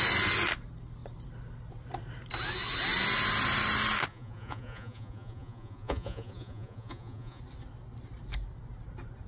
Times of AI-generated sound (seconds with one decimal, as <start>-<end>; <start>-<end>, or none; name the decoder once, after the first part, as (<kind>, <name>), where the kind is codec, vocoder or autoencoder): 4.1-7.4 (vocoder, Vocos)